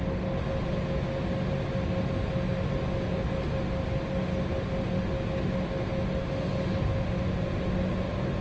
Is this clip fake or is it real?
real